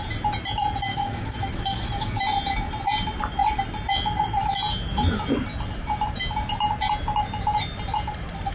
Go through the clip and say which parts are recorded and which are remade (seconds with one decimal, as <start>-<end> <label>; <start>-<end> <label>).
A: 0.0-0.9 recorded; 0.9-2.2 remade; 2.2-8.5 recorded